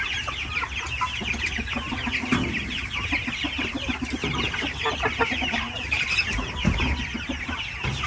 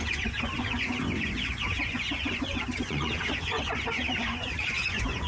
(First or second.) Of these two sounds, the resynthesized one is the second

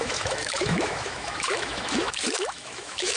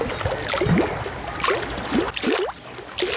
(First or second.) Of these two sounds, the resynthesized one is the first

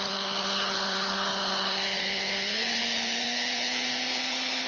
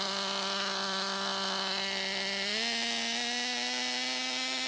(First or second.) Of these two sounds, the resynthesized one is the first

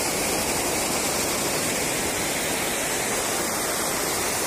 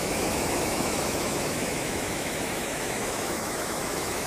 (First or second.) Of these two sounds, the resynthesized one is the second